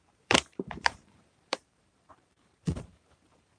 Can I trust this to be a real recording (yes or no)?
no